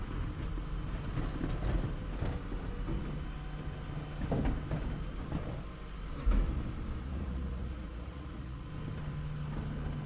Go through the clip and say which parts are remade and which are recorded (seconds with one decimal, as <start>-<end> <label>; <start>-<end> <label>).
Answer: 0.0-7.0 recorded; 7.0-8.7 remade; 8.7-10.1 recorded